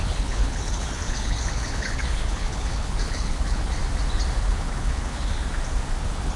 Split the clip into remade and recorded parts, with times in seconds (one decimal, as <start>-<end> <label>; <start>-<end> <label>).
0.0-3.8 remade; 3.8-4.4 recorded; 4.4-5.4 remade; 5.4-6.0 recorded; 6.0-6.4 remade